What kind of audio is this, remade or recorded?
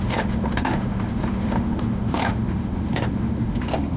remade